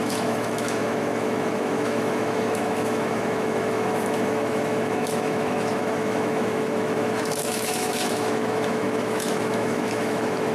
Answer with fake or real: fake